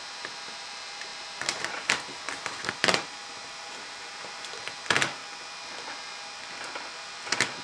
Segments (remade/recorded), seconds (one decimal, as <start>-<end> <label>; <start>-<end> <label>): 0.0-5.2 remade; 5.2-7.6 recorded